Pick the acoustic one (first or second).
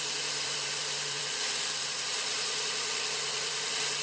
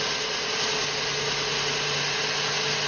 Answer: second